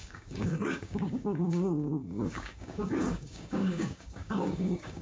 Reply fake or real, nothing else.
fake